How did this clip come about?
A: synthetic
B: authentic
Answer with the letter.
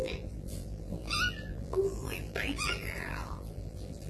A